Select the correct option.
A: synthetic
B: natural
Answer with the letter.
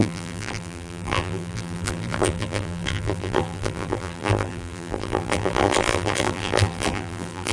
A